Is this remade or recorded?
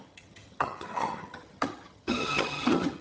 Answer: remade